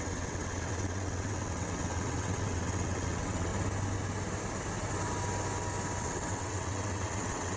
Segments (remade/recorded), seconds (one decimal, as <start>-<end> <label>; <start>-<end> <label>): 0.0-3.5 remade; 3.5-6.0 recorded; 6.0-7.6 remade